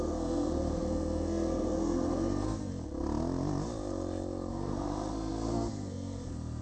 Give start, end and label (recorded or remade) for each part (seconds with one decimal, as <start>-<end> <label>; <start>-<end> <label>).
0.0-2.7 remade; 2.7-4.5 recorded; 4.5-6.6 remade